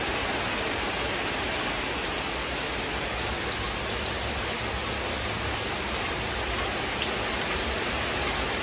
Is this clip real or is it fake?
real